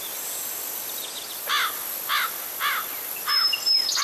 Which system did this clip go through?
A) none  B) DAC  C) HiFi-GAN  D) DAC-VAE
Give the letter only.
A